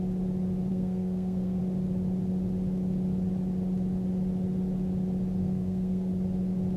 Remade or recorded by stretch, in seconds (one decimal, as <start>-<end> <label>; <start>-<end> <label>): 0.0-0.7 recorded; 0.7-1.6 remade; 1.6-5.4 recorded; 5.4-6.1 remade; 6.1-6.8 recorded